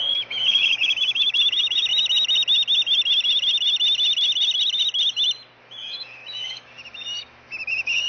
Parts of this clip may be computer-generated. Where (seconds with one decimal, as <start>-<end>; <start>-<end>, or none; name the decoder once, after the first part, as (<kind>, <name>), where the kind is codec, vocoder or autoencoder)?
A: 0.0-1.9 (autoencoder, DAC-VAE); 5.6-8.1